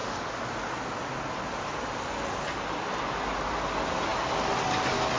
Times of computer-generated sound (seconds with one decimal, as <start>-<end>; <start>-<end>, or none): none